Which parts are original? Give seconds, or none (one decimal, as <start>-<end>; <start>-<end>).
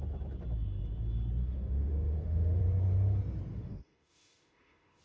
0.0-1.4; 2.6-3.5